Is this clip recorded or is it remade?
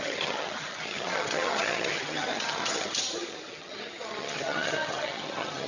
remade